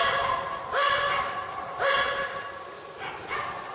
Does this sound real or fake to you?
real